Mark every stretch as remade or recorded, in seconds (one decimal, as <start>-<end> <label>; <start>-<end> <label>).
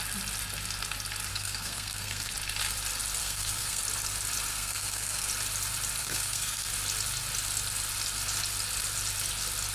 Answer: 0.0-1.3 recorded; 1.3-2.3 remade; 2.3-3.2 recorded; 3.2-3.8 remade; 3.8-4.5 recorded; 4.5-5.3 remade; 5.3-6.0 recorded; 6.0-6.7 remade; 6.7-9.7 recorded